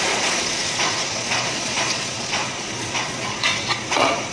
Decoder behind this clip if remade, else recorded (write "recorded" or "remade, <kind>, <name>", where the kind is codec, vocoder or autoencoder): remade, vocoder, Vocos